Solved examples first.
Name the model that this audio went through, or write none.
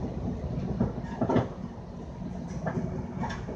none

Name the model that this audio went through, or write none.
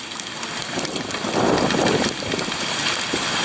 none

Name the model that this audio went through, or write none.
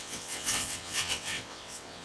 vocoder, WaveNeXt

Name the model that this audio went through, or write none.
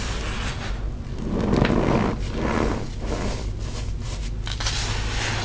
none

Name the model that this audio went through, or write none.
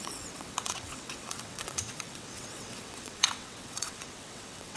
vocoder, WaveNeXt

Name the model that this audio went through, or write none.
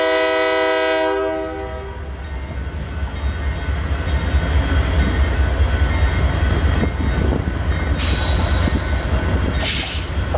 none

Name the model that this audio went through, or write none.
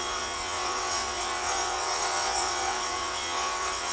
vocoder, WaveNeXt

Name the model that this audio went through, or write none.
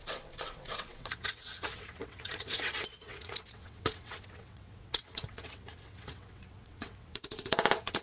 vocoder, WaveNeXt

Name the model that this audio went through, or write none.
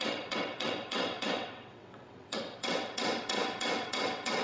vocoder, WaveNeXt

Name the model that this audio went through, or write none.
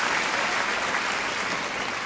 none